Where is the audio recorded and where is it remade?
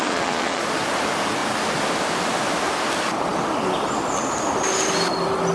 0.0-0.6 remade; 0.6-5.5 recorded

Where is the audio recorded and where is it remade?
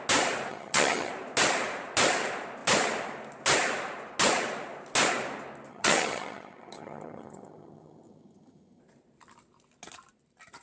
0.0-0.5 recorded; 0.5-1.1 remade; 1.1-5.7 recorded; 5.7-8.8 remade; 8.8-10.6 recorded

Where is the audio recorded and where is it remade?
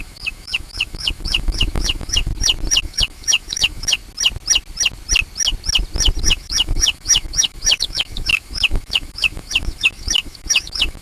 0.0-2.3 remade; 2.3-2.8 recorded; 2.8-4.0 remade; 4.0-6.2 recorded; 6.2-11.0 remade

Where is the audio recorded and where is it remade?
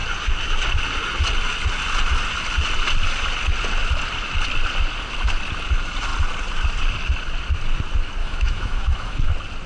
0.0-8.2 recorded; 8.2-9.2 remade; 9.2-9.7 recorded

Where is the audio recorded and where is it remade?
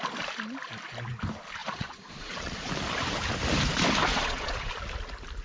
0.0-1.6 recorded; 1.6-2.7 remade; 2.7-4.1 recorded; 4.1-4.7 remade; 4.7-5.4 recorded